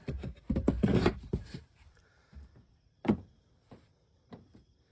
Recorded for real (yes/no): no